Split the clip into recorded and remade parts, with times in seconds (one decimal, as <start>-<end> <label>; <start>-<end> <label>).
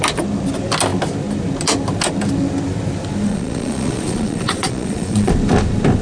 0.0-3.3 recorded; 3.3-5.3 remade; 5.3-6.0 recorded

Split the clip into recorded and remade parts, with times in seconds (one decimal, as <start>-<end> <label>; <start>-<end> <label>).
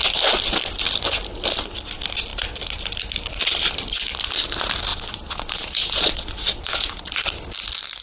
0.0-4.9 recorded; 4.9-7.2 remade; 7.2-8.0 recorded